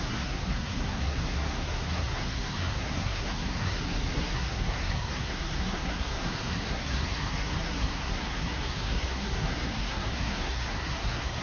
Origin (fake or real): fake